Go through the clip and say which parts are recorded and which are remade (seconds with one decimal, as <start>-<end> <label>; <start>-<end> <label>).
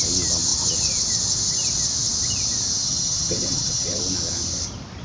0.0-2.8 recorded; 2.8-4.0 remade; 4.0-5.0 recorded